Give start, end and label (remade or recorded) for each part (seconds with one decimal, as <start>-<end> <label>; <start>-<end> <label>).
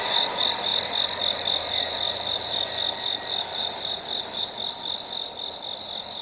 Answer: 0.0-6.2 recorded